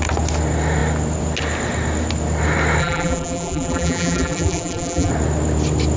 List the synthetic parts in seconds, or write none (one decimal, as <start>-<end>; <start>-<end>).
2.8-5.1